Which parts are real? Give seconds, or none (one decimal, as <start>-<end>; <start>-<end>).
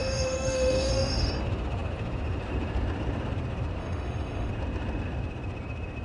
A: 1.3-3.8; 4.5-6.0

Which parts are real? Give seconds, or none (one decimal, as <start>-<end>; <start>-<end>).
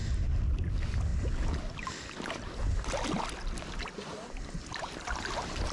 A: 0.0-5.7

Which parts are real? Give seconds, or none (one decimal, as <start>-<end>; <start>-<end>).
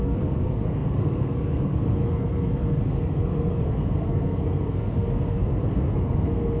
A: none